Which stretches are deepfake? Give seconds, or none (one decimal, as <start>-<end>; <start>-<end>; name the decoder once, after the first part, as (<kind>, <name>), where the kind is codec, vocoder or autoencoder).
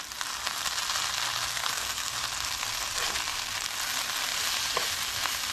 1.5-2.1 (codec, SNAC)